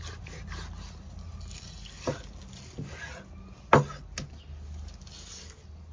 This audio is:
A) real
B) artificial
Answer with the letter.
A